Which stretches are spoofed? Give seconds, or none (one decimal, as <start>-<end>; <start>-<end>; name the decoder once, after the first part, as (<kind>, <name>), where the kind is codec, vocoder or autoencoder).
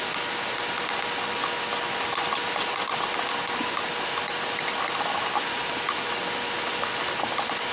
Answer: none